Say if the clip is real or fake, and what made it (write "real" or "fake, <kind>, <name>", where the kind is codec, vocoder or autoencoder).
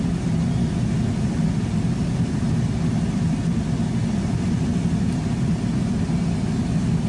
real